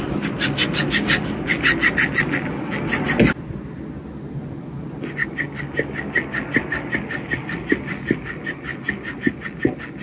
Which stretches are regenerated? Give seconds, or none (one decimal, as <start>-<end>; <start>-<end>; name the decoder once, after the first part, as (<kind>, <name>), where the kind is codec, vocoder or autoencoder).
none